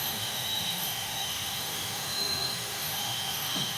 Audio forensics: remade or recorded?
remade